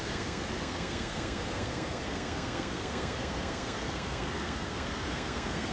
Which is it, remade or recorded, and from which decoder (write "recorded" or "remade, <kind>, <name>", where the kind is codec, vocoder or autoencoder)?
remade, codec, SNAC